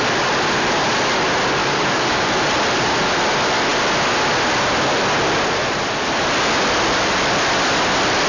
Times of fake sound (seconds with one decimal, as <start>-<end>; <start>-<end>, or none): 1.6-2.3